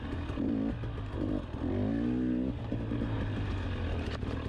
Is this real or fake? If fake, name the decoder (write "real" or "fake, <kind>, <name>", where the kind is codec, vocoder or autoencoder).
real